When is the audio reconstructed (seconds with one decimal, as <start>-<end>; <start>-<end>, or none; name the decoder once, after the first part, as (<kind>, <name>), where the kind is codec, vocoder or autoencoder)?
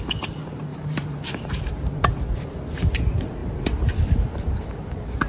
0.7-2.0 (vocoder, BigVGAN v2); 3.4-4.7